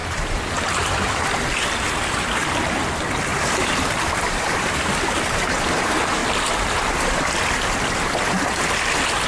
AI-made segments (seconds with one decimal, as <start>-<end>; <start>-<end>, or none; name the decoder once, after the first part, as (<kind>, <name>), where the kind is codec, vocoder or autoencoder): 0.0-1.2 (vocoder, BigVGAN v2); 3.3-4.9